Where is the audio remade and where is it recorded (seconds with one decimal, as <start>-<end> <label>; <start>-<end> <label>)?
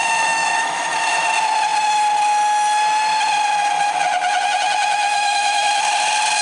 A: 0.0-0.8 remade; 0.8-5.1 recorded; 5.1-5.7 remade; 5.7-6.4 recorded